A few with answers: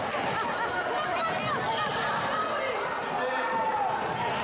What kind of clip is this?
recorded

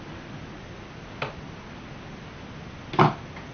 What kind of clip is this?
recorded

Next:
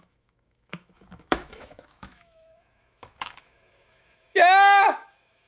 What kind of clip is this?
remade